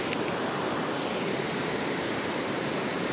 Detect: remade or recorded remade